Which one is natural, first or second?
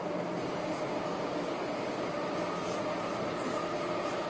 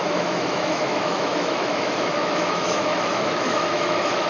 first